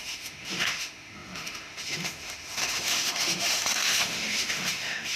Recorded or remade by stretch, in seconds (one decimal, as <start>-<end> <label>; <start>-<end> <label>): 0.0-5.2 remade